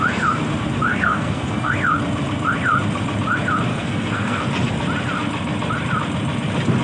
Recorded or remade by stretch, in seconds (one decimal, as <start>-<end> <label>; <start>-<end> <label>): 0.0-0.9 recorded; 0.9-1.7 remade; 1.7-3.7 recorded; 3.7-4.4 remade; 4.4-6.8 recorded